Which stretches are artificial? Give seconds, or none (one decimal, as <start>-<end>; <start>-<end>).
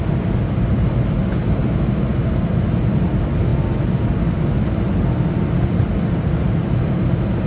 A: none